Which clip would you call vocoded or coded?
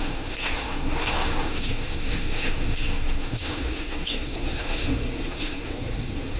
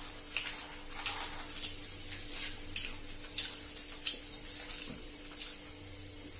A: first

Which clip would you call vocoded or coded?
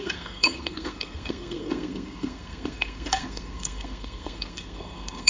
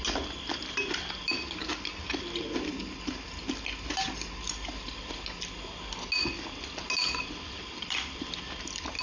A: first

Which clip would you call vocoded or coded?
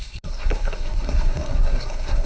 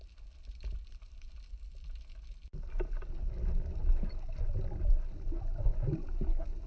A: first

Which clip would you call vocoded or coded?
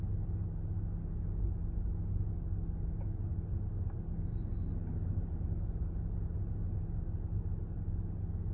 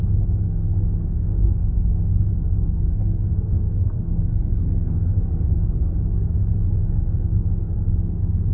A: second